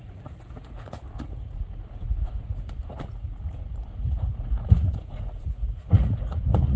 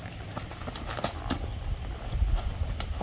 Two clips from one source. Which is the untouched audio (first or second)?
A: second